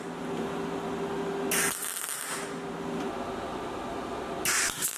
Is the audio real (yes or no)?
yes